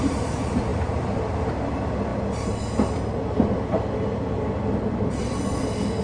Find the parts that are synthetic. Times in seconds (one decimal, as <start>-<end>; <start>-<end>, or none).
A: none